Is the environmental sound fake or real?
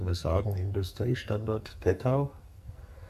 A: fake